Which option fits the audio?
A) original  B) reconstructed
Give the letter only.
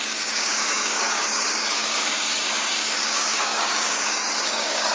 B